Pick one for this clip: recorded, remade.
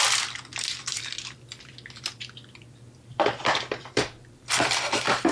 remade